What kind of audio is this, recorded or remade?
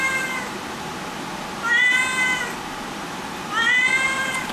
remade